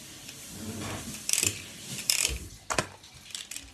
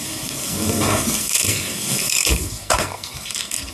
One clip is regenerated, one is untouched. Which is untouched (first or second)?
first